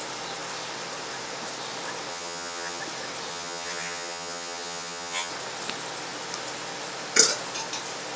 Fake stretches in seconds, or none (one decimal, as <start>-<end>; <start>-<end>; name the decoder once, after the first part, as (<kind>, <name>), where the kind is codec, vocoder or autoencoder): 2.1-2.8 (vocoder, HiFi-GAN); 3.3-5.3